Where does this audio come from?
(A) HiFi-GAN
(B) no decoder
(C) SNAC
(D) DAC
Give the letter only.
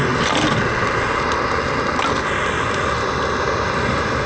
B